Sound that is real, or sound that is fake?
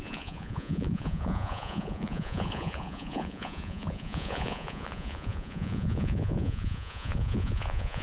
fake